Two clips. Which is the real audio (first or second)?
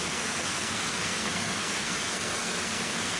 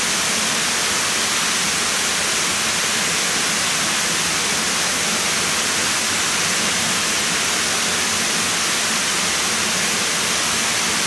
second